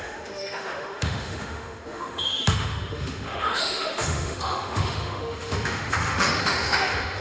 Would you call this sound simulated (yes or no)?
yes